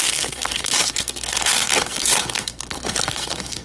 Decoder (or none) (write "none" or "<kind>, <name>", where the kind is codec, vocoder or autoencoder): codec, SNAC